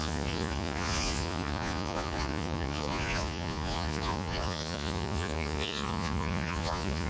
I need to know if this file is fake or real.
fake